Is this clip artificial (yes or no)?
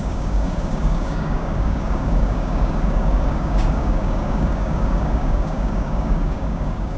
yes